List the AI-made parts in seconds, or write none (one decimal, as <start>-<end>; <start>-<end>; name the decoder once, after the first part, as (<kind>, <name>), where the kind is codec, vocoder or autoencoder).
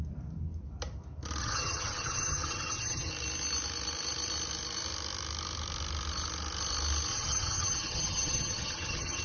1.4-3.1 (vocoder, HiFi-GAN); 7.1-9.2